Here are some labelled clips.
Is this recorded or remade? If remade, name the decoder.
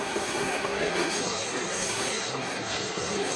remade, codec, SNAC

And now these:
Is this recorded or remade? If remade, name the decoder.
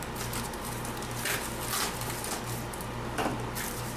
recorded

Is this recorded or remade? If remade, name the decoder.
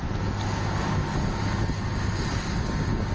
recorded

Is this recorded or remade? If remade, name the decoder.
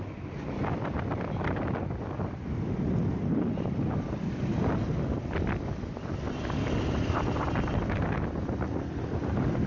recorded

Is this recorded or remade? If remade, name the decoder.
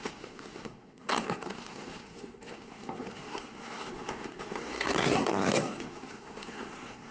remade, codec, SNAC